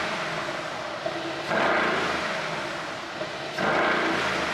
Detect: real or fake real